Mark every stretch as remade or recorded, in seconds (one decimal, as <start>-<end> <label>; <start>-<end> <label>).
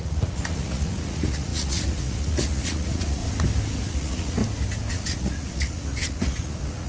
0.0-3.2 remade; 3.2-3.9 recorded; 3.9-4.4 remade; 4.4-4.9 recorded; 4.9-6.9 remade